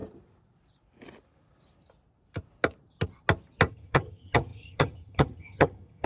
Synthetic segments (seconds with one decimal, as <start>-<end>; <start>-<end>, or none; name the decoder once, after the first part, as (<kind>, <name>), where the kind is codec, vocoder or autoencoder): 3.7-6.1 (vocoder, HiFi-GAN)